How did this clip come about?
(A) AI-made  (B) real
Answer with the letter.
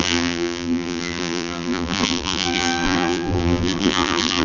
A